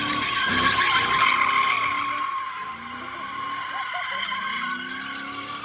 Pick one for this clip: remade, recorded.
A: recorded